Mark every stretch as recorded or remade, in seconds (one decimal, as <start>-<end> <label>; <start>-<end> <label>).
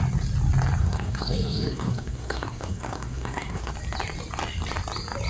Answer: 0.0-0.8 recorded; 0.8-3.7 remade; 3.7-5.3 recorded